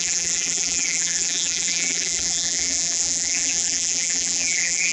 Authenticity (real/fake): fake